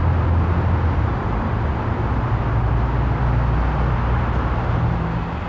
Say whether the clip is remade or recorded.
recorded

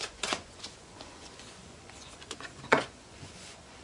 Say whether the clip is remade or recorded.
remade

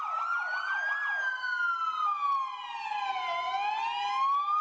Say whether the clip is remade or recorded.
recorded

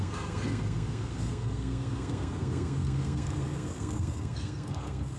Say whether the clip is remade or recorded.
remade